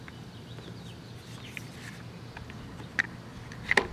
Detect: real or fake real